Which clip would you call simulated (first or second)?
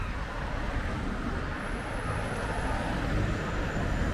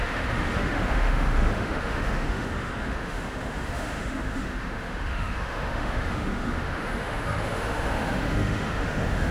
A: second